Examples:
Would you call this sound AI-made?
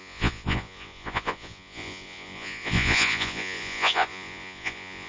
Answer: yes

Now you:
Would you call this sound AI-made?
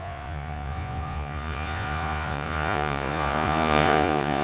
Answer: yes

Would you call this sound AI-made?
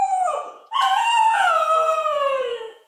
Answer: yes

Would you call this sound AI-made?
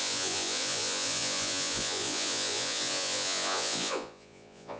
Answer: yes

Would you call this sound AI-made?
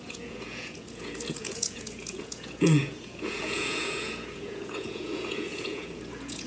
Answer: yes